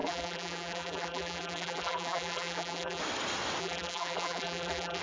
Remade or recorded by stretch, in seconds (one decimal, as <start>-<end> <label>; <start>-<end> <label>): 0.0-3.0 remade; 3.0-3.6 recorded; 3.6-5.0 remade